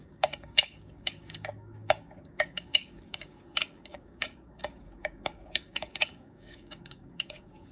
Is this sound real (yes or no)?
no